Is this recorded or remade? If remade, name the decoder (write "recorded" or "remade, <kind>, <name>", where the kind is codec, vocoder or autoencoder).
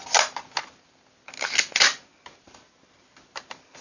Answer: recorded